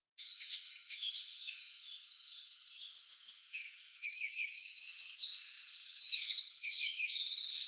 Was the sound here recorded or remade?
remade